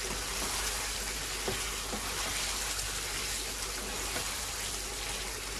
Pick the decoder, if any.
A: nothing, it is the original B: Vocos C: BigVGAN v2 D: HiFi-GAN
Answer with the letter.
A